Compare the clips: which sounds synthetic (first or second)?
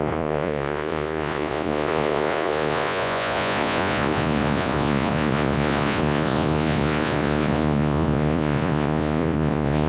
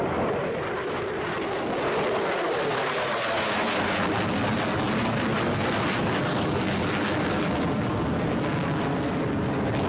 first